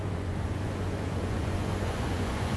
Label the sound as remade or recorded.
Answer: remade